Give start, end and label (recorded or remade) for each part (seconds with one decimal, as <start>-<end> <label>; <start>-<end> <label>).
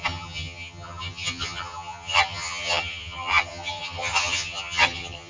0.0-5.3 remade